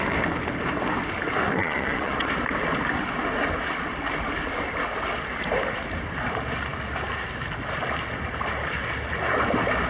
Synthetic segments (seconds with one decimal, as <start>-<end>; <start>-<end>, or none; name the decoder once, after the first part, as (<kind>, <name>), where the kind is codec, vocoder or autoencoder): 1.6-2.3 (vocoder, Vocos)

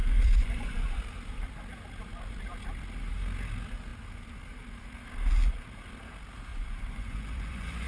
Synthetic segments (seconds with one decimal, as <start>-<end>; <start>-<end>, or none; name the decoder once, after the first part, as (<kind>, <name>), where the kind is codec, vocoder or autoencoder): 0.0-1.0 (vocoder, Vocos); 6.5-7.9

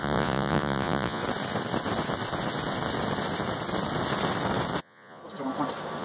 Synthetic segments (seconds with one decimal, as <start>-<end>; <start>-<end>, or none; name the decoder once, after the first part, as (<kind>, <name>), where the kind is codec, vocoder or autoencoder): 0.0-1.2 (vocoder, Vocos); 4.8-5.2

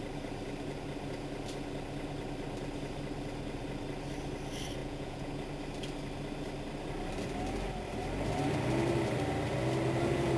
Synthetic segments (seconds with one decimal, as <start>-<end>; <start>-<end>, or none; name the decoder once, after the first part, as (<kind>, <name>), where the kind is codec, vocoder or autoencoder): 4.8-5.3 (vocoder, Vocos)

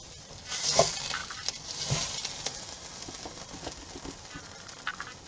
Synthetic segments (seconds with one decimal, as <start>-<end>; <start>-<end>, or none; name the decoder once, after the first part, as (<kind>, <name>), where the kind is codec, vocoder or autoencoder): none

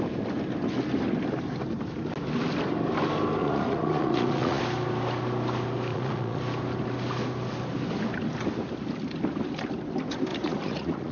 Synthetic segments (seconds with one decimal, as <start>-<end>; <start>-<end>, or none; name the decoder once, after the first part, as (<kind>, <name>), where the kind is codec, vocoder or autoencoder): 3.4-4.6 (vocoder, Vocos); 5.9-6.4; 10.3-11.1

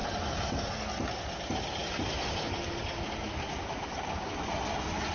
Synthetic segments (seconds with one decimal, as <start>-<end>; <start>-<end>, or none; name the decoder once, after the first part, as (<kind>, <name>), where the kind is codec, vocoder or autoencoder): none